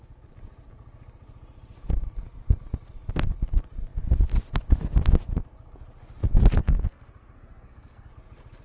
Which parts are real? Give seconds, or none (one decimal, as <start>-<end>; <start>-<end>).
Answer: 0.0-6.6; 8.1-8.6